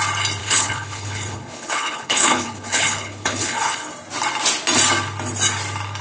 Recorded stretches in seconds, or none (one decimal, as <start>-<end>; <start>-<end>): 0.0-0.4; 3.9-6.0